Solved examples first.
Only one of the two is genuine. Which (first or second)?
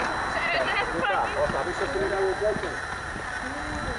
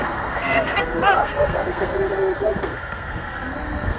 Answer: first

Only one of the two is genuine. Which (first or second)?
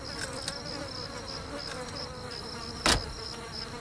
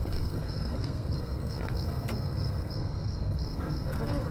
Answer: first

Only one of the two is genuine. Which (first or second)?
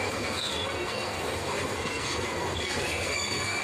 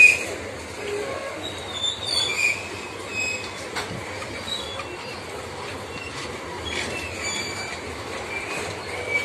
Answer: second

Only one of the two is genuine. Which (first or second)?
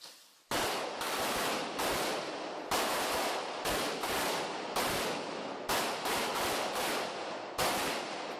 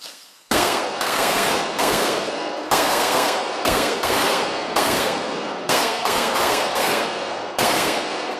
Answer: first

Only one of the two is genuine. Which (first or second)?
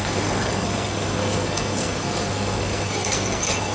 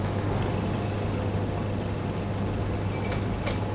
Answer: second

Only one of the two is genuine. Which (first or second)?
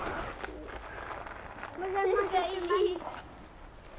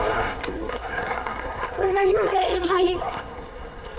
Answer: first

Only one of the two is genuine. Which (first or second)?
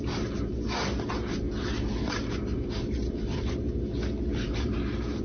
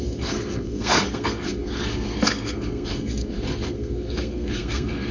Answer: first